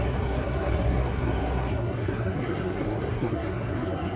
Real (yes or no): no